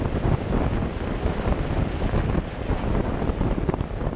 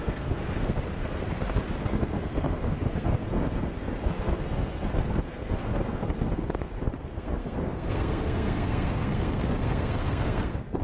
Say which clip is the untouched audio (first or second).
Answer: first